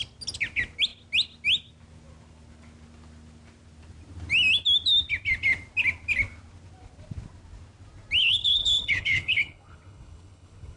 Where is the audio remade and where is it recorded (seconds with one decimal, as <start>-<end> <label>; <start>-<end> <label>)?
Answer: 0.0-8.2 recorded; 8.2-10.8 remade